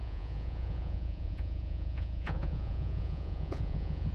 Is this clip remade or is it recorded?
remade